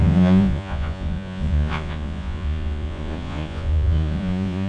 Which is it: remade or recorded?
remade